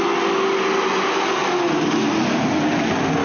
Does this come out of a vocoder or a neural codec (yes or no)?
no